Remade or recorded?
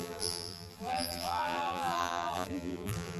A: remade